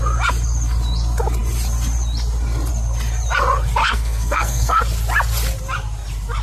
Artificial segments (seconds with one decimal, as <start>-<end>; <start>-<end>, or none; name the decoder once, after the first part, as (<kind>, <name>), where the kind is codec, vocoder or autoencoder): 3.8-4.8 (codec, SNAC)